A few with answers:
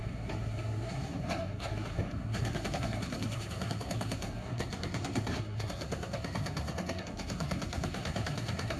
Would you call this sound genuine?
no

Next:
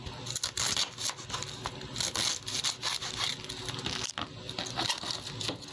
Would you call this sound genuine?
yes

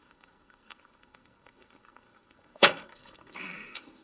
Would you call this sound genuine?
no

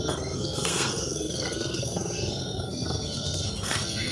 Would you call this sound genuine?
no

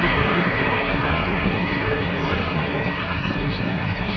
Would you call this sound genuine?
no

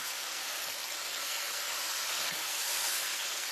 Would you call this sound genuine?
no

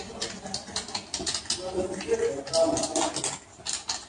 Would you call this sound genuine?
yes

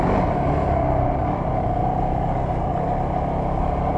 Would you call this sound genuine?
yes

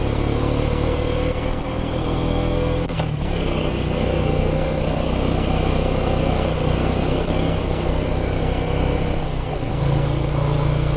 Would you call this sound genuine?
no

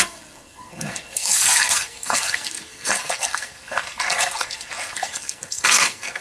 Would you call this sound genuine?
no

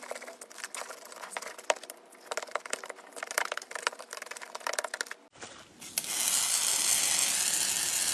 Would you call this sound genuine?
yes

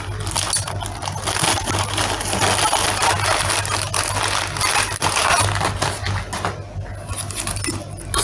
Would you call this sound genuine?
yes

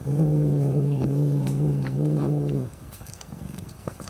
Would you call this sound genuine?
no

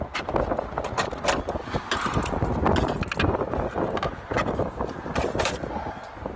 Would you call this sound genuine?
yes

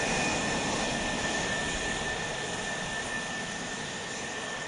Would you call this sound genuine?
yes